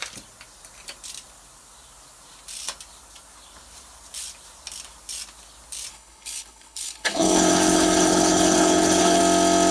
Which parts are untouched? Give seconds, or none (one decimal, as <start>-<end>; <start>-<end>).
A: 0.0-5.9; 9.2-9.7